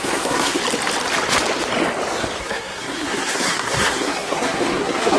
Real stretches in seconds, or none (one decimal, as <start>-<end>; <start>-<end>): 0.6-2.4